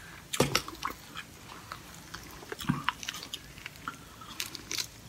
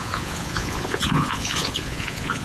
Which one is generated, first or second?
second